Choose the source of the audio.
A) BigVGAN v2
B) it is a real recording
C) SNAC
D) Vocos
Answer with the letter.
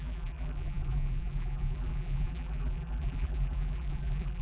A